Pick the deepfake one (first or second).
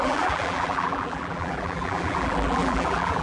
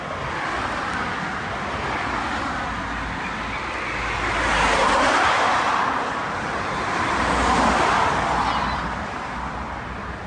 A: first